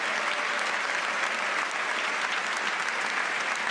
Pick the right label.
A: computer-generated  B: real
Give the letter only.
B